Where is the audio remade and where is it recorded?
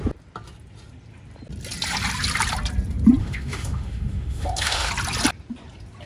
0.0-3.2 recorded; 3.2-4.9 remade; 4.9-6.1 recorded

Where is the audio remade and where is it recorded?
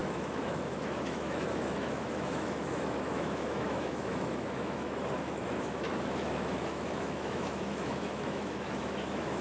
0.0-9.4 remade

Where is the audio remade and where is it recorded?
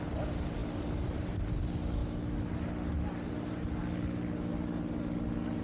0.0-2.0 recorded; 2.0-2.5 remade; 2.5-5.6 recorded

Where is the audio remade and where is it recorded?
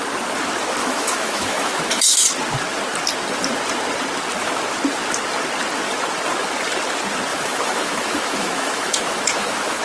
0.0-0.8 recorded; 0.8-2.3 remade; 2.3-7.3 recorded; 7.3-9.8 remade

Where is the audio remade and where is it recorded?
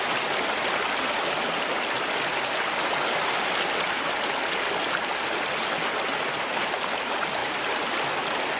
0.0-8.6 recorded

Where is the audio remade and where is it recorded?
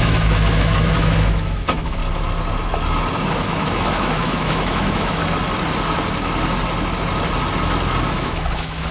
0.0-2.0 remade; 2.0-3.3 recorded; 3.3-5.2 remade; 5.2-8.2 recorded; 8.2-8.9 remade